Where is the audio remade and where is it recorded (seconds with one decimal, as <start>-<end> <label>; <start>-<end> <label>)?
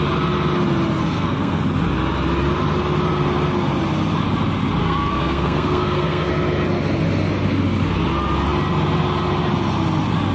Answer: 0.0-1.0 recorded; 1.0-1.6 remade; 1.6-4.8 recorded; 4.8-6.3 remade; 6.3-10.3 recorded